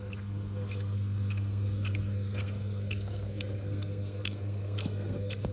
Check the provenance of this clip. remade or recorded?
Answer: remade